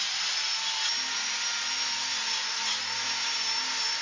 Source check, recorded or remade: recorded